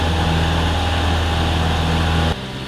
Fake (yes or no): no